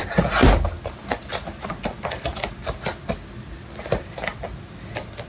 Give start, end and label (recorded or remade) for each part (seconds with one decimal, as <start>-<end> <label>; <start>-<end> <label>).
0.0-5.3 recorded